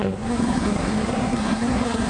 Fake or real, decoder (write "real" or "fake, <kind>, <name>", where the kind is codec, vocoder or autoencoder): fake, codec, SNAC